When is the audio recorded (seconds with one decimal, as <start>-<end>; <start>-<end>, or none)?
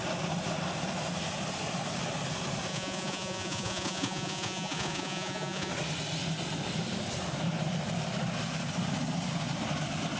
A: 0.0-2.7; 5.7-10.2